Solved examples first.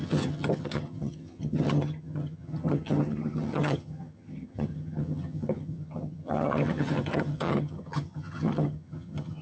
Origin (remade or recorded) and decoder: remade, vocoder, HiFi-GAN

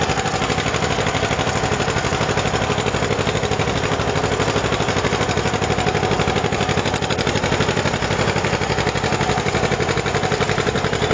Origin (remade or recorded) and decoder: recorded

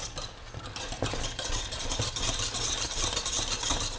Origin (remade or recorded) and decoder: recorded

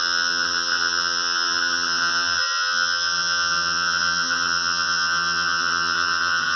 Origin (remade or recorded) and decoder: remade, vocoder, HiFi-GAN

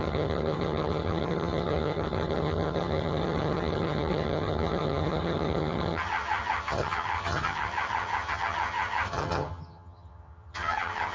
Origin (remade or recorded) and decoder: remade, vocoder, HiFi-GAN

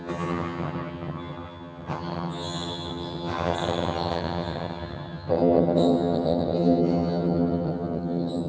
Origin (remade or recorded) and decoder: remade, vocoder, HiFi-GAN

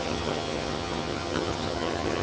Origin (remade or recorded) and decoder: remade, vocoder, HiFi-GAN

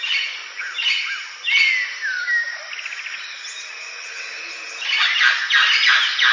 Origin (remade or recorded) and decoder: recorded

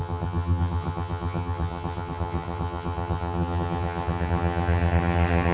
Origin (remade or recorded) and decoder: remade, vocoder, HiFi-GAN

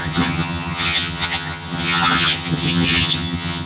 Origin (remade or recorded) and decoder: remade, vocoder, HiFi-GAN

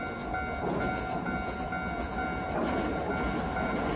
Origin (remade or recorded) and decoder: recorded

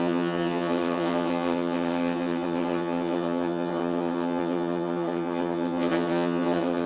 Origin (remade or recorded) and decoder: remade, vocoder, HiFi-GAN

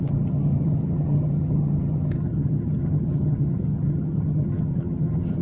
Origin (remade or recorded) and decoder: remade, vocoder, HiFi-GAN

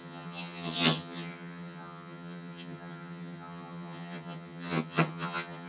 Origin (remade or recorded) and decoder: remade, vocoder, HiFi-GAN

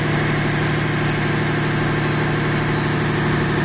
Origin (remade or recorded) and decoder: recorded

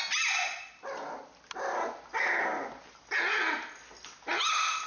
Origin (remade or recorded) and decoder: recorded